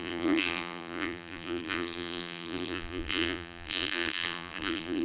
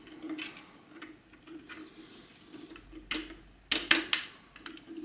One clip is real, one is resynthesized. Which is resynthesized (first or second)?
first